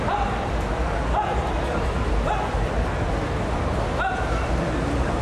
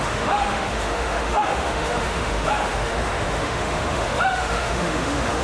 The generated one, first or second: second